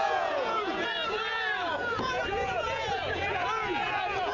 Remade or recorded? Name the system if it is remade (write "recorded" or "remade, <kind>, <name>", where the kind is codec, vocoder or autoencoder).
remade, vocoder, Vocos